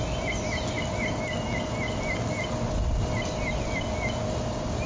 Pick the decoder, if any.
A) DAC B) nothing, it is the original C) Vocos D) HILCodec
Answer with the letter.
B